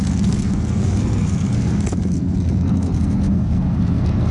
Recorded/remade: remade